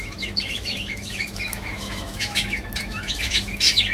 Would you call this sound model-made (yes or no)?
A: yes